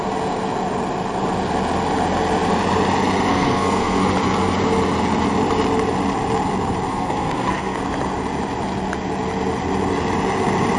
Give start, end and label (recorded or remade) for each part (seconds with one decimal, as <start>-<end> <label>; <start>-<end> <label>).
0.0-3.3 recorded; 3.3-4.0 remade; 4.0-6.9 recorded; 6.9-7.8 remade; 7.8-10.8 recorded